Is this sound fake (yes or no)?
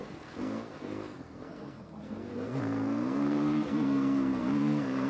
yes